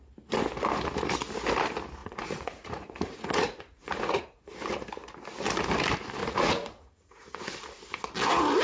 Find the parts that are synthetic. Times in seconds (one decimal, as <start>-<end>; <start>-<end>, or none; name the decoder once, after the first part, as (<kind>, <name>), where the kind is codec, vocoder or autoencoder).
2.0-4.5 (vocoder, Vocos); 6.2-7.5